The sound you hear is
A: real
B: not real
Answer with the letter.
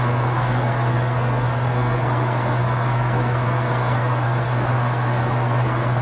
B